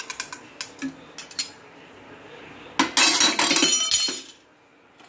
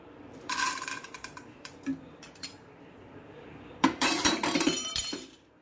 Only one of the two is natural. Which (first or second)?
first